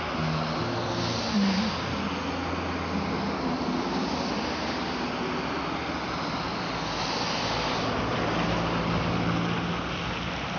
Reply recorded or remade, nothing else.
recorded